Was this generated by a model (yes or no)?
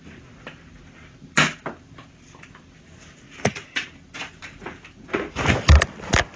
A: no